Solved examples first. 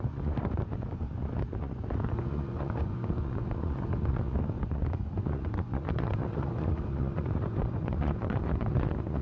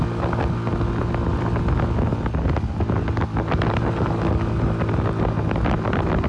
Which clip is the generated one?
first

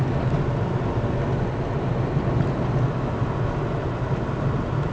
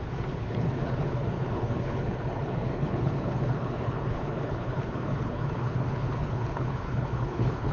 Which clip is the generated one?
second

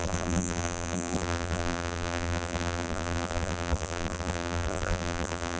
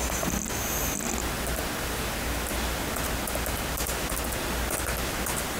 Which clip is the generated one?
first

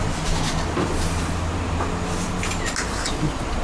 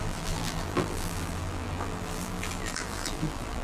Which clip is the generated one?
second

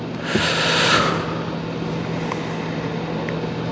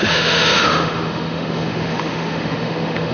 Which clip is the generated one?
second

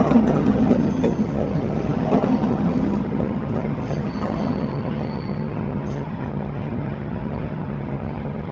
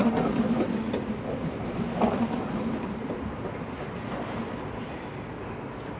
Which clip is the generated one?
first